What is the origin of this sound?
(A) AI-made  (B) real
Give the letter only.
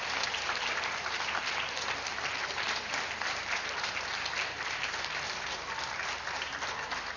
B